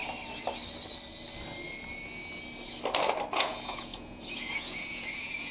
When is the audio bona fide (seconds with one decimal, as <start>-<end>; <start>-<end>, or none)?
0.0-3.3